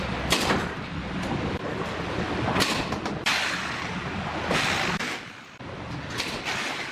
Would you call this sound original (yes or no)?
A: yes